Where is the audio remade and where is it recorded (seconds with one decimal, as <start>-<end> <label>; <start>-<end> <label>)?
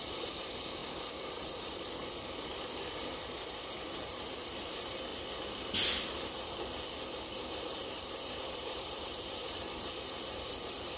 0.0-0.8 remade; 0.8-3.2 recorded; 3.2-5.1 remade; 5.1-7.9 recorded; 7.9-11.0 remade